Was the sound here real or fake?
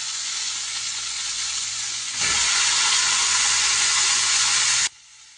fake